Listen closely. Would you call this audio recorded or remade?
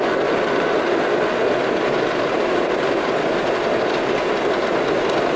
recorded